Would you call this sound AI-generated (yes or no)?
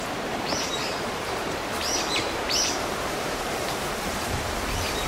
yes